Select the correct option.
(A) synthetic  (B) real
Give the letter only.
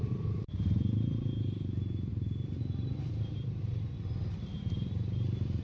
A